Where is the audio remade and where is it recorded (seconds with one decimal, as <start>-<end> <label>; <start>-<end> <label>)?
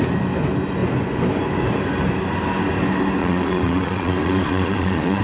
0.0-3.2 recorded; 3.2-5.2 remade